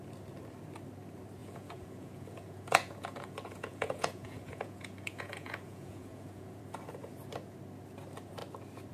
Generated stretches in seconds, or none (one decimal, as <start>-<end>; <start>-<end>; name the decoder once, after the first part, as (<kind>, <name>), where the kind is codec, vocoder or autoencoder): 1.4-6.6 (vocoder, Vocos)